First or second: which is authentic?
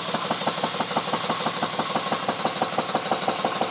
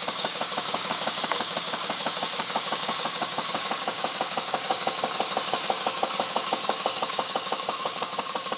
first